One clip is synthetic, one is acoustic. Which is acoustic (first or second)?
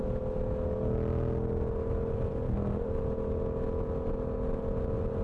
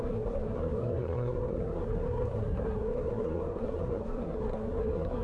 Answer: first